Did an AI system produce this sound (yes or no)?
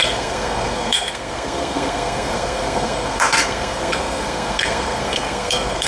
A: yes